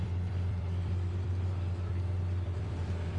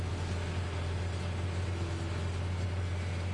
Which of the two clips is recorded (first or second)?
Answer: second